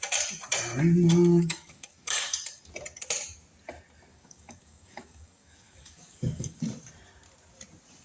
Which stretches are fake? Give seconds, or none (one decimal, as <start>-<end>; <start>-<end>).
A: 1.3-2.6; 4.1-6.6